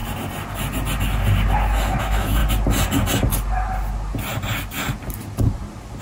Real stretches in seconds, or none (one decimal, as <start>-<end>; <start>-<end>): 0.0-2.0; 2.4-6.0